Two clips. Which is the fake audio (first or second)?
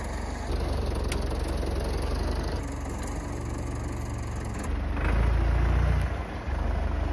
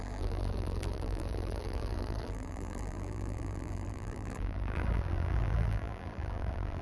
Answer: second